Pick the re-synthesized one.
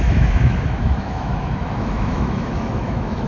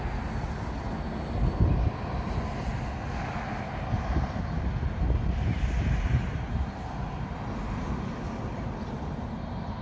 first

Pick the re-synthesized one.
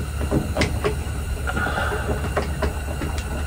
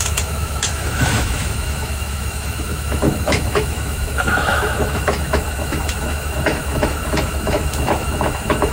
second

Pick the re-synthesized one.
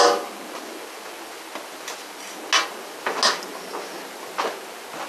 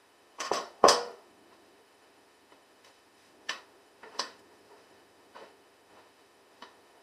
second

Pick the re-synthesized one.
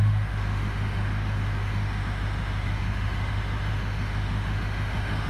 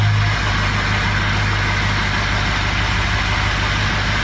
first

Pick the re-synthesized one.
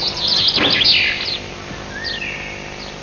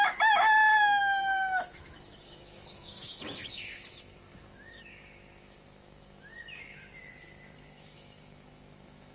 second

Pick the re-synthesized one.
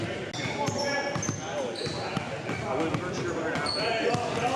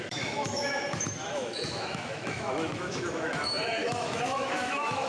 second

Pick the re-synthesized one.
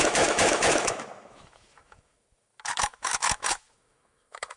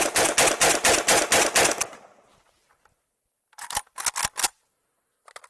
first